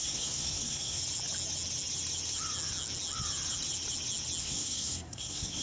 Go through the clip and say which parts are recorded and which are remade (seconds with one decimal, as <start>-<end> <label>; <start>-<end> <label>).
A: 0.0-1.0 remade; 1.0-4.4 recorded; 4.4-5.6 remade